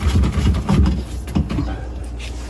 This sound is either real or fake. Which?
real